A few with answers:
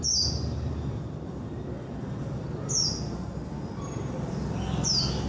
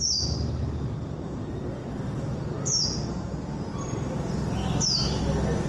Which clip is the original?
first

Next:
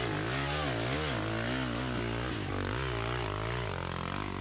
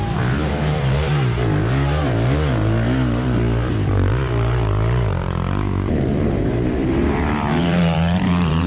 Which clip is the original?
first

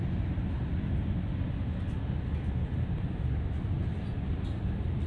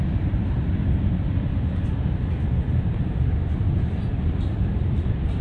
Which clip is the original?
first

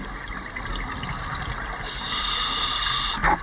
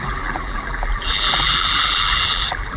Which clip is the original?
first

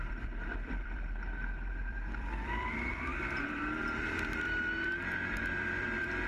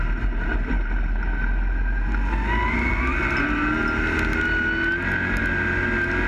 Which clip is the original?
second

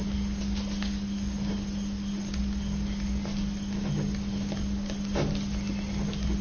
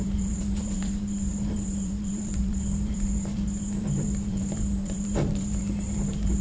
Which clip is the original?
first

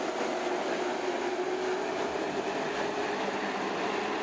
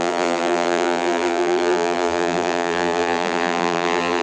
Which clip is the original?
first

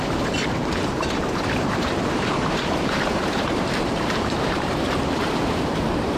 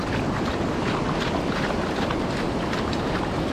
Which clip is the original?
second